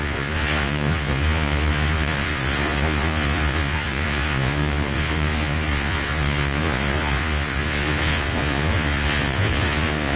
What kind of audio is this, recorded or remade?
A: remade